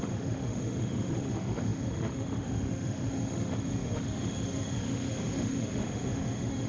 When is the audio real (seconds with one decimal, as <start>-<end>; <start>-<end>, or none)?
none